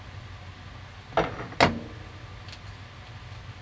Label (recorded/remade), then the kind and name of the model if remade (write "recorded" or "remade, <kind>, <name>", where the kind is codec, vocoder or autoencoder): recorded